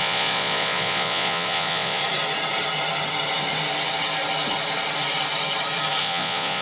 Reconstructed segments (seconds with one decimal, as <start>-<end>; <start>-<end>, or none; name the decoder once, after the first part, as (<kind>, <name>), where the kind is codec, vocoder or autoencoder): 0.0-2.0 (vocoder, Vocos); 6.0-6.6